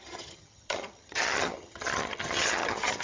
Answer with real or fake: fake